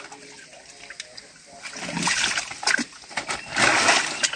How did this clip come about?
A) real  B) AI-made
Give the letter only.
A